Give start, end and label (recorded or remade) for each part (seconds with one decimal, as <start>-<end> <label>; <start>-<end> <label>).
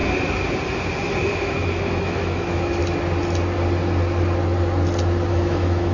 0.0-1.3 recorded; 1.3-2.8 remade; 2.8-5.3 recorded; 5.3-5.9 remade